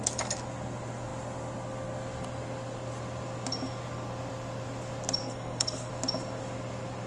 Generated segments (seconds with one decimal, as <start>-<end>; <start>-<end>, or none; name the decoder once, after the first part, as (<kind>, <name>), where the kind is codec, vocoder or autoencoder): 5.2-5.9 (codec, SNAC)